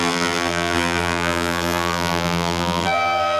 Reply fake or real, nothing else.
fake